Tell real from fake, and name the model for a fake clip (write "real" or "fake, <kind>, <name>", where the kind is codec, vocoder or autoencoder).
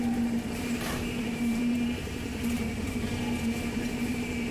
fake, vocoder, BigVGAN v2